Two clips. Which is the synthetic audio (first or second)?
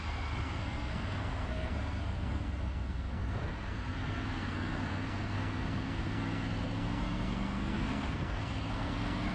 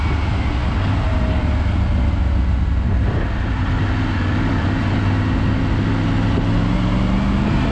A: first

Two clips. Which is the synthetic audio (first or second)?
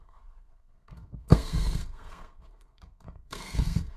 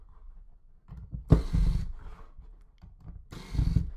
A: first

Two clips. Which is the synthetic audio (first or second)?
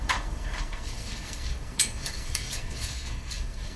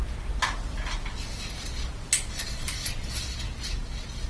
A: first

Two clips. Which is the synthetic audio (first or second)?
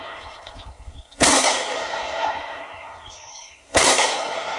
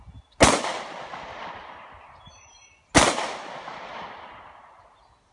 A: first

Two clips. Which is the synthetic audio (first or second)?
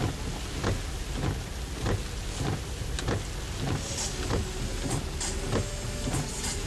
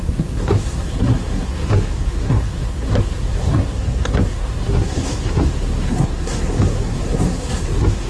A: second